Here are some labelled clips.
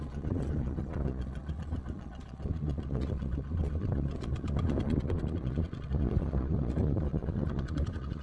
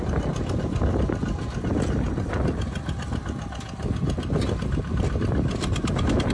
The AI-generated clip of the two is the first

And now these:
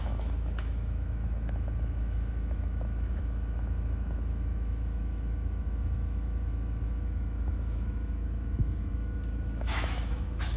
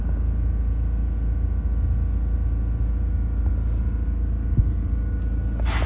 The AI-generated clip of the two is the first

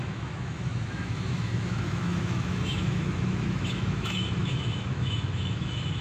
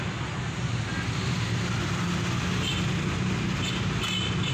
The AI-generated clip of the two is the first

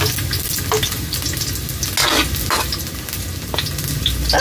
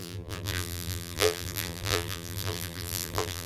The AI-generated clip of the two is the second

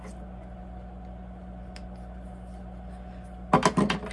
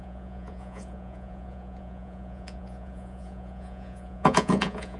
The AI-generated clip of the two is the second